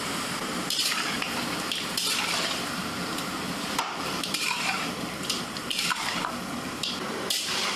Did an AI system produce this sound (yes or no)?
yes